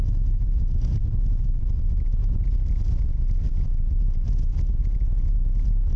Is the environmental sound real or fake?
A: real